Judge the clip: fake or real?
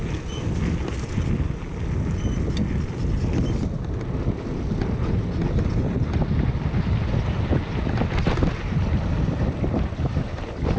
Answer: real